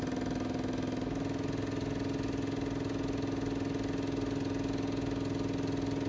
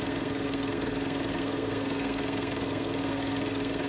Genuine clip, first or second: first